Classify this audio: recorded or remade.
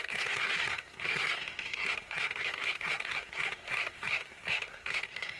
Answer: remade